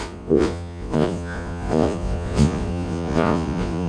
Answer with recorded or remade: remade